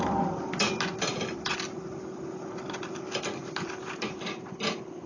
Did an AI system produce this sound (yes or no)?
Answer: no